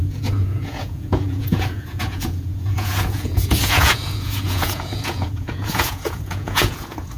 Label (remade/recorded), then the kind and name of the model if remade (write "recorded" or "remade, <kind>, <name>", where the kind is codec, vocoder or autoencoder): remade, vocoder, Vocos